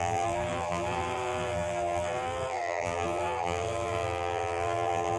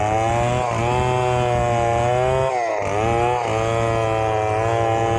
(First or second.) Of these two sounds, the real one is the second